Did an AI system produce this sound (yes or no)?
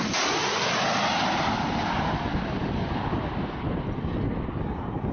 no